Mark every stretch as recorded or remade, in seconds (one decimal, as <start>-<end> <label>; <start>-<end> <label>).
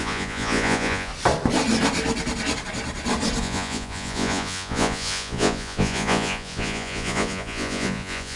0.0-1.1 remade; 1.1-3.4 recorded; 3.4-8.4 remade